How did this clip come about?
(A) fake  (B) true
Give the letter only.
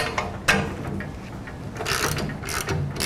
B